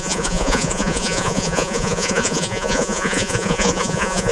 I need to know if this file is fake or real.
fake